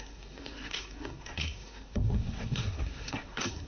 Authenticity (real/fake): fake